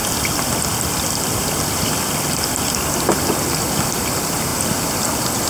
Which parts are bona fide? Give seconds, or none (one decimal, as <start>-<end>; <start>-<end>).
0.0-5.5